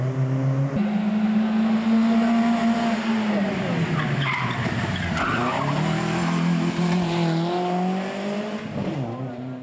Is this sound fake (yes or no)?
no